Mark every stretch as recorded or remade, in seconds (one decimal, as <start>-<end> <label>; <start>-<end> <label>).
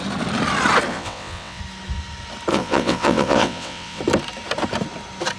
0.0-0.9 recorded; 0.9-1.6 remade; 1.6-2.5 recorded; 2.5-4.0 remade; 4.0-5.4 recorded